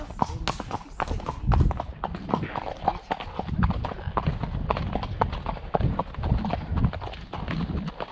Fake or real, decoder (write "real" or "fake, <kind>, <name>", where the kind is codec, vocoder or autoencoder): real